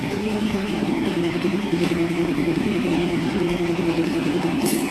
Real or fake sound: fake